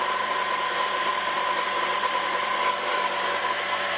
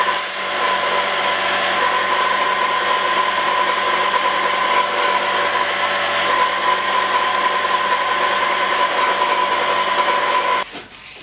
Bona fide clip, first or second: second